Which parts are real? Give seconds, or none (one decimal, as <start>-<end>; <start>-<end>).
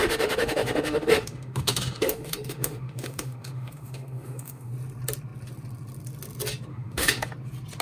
4.7-6.7; 7.3-7.8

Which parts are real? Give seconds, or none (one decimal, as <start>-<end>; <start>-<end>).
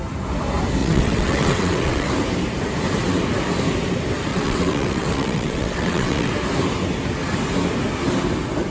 0.0-0.8; 2.1-4.3; 6.3-8.7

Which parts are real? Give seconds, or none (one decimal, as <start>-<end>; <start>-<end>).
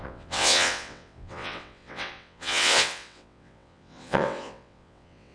none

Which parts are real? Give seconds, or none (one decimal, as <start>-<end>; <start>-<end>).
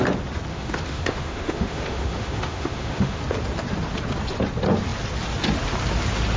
0.0-0.5; 3.2-6.4